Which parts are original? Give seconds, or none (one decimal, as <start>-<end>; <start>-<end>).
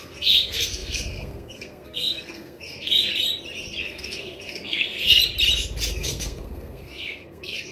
3.1-3.8; 5.2-5.9